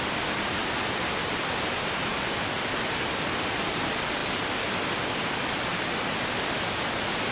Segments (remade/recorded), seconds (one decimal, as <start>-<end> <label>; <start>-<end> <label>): 0.0-7.3 recorded